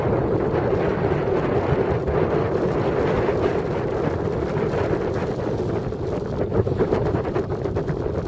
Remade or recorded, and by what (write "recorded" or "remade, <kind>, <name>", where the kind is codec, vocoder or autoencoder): recorded